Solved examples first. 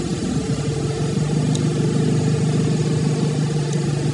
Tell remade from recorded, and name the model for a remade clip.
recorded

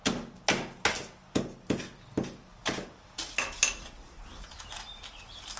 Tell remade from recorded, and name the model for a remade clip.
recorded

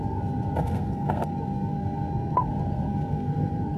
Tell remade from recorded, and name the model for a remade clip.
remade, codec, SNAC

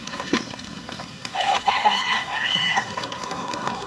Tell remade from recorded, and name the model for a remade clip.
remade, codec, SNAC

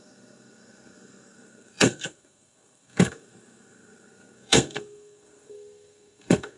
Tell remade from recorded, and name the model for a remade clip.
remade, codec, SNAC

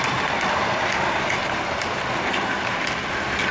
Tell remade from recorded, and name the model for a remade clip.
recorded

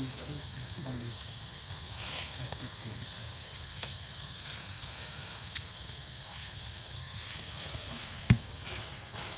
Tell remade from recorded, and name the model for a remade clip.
remade, codec, SNAC